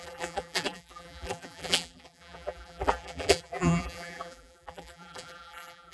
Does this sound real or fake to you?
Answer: fake